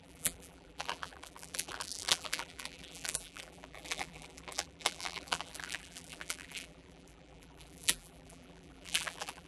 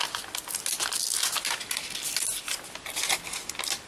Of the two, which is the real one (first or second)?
second